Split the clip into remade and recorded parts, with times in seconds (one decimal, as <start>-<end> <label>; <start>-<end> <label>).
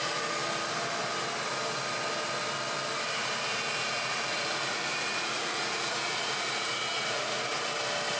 0.0-3.2 recorded; 3.2-7.5 remade; 7.5-8.2 recorded